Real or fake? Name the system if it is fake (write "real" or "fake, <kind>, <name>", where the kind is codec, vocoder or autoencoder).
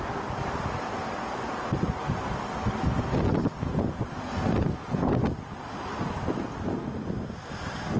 real